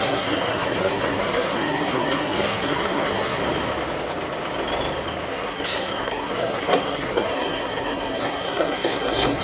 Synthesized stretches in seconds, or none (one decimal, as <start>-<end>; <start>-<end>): 0.0-3.4; 5.3-9.4